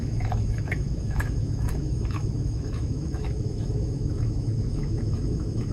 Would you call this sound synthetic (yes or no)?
yes